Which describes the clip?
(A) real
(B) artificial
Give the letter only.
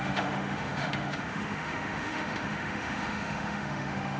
B